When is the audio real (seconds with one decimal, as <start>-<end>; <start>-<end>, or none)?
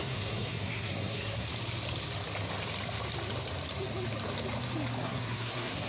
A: 1.5-5.0